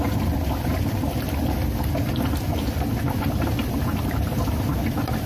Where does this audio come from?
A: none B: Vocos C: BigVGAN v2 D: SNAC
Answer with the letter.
C